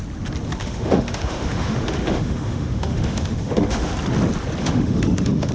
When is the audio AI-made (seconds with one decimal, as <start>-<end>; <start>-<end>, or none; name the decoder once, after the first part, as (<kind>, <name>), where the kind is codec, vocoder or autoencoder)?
0.6-3.9 (autoencoder, DAC-VAE); 4.6-5.5